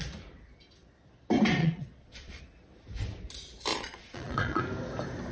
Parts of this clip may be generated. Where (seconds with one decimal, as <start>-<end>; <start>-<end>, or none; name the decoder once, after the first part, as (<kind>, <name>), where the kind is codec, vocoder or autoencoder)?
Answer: 1.6-2.4 (vocoder, Vocos); 3.7-4.6